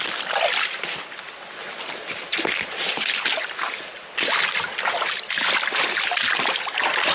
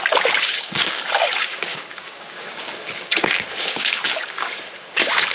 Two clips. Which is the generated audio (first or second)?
second